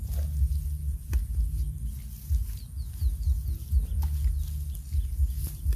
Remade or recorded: recorded